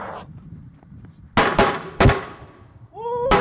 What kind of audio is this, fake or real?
real